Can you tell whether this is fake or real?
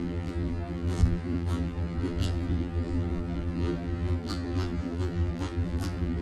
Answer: fake